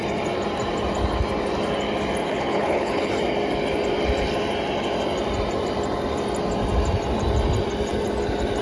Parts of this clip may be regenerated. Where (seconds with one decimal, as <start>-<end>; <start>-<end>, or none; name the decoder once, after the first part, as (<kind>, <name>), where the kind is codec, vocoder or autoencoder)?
2.2-3.1 (codec, HILCodec)